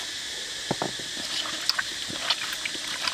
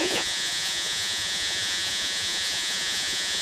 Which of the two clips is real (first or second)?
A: first